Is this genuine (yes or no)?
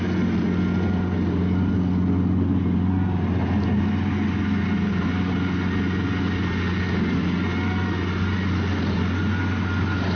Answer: yes